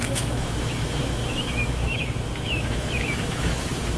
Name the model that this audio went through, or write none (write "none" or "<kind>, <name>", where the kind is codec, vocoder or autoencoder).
autoencoder, DAC-VAE